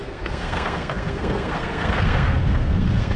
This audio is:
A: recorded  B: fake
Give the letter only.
B